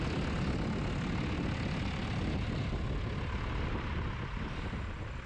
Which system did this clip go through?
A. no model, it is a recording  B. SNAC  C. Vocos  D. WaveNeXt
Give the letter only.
A